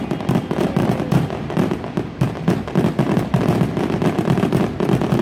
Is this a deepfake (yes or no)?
no